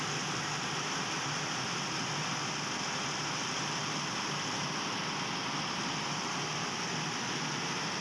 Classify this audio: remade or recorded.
recorded